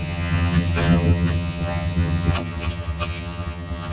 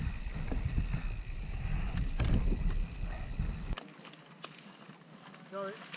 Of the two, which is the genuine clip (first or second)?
second